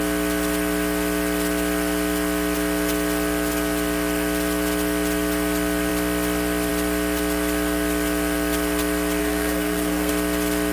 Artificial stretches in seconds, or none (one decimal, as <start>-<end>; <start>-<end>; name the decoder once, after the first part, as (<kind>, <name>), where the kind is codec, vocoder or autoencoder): 9.2-10.1 (codec, SNAC)